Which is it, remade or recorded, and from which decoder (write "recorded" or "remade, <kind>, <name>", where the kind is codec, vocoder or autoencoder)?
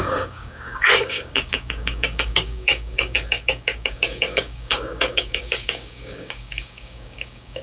remade, codec, DAC